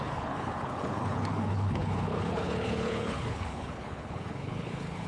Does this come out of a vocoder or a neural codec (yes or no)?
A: yes